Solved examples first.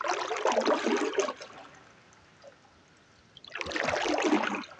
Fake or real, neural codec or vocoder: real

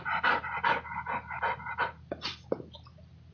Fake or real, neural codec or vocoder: real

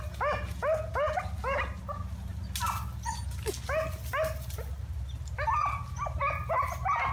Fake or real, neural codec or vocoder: real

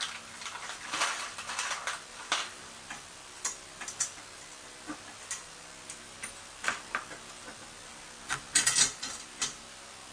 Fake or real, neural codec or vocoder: real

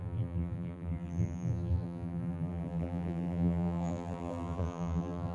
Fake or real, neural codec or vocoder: fake, vocoder, BigVGAN v2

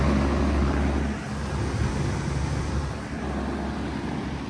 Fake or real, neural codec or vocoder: real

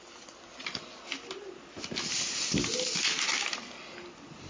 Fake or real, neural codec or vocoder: real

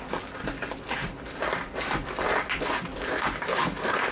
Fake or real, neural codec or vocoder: real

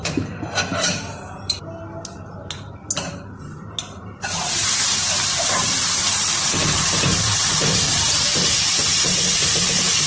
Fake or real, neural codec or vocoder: fake, vocoder, BigVGAN v2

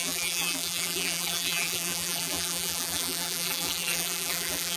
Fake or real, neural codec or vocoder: fake, vocoder, BigVGAN v2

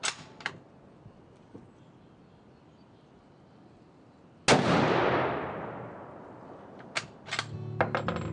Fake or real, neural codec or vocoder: real